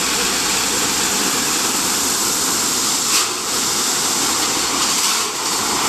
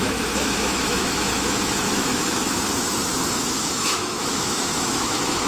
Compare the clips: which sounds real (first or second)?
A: first